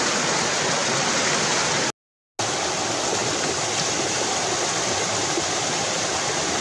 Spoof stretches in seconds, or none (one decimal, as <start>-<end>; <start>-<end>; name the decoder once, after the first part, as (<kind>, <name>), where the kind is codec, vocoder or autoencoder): none